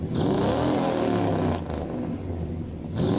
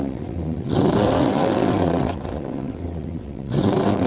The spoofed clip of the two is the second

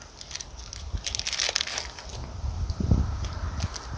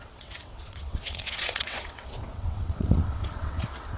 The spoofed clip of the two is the second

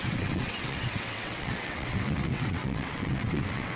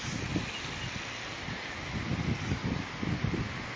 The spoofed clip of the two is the first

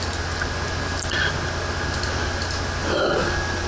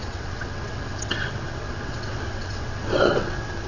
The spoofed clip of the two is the second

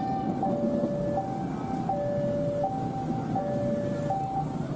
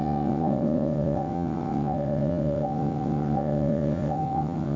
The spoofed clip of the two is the second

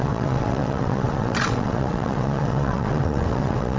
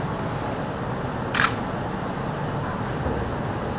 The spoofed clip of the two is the first